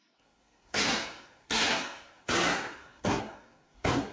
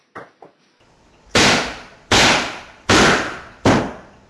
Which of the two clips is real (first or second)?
second